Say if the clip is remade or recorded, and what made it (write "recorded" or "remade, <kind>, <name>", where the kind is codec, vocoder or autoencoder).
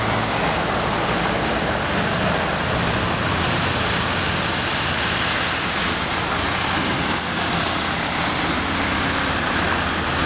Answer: recorded